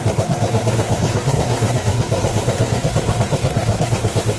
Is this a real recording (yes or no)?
no